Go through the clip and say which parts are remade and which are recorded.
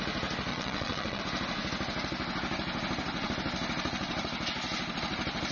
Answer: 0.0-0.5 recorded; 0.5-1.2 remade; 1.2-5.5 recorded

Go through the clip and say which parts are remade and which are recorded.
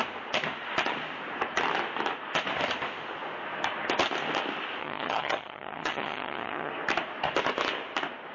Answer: 0.0-4.8 recorded; 4.8-6.7 remade; 6.7-8.3 recorded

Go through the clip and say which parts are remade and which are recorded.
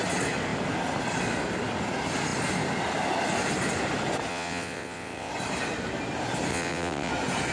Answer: 0.0-4.3 recorded; 4.3-5.3 remade; 5.3-6.5 recorded; 6.5-7.1 remade; 7.1-7.5 recorded